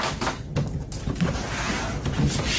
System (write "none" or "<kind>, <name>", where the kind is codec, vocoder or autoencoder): none